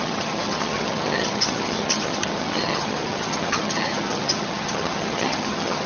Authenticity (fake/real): fake